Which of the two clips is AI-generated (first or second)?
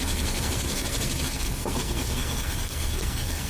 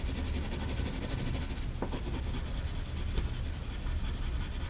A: first